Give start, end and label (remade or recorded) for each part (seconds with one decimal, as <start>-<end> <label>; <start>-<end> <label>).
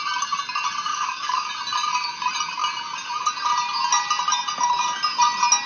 0.0-0.9 recorded; 0.9-1.5 remade; 1.5-5.7 recorded